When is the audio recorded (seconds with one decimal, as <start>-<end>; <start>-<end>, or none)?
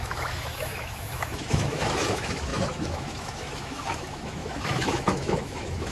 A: none